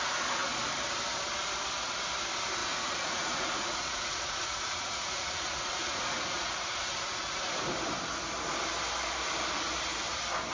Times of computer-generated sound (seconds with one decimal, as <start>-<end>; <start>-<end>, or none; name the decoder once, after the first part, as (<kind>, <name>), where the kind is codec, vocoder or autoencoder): 2.6-7.7 (vocoder, Vocos)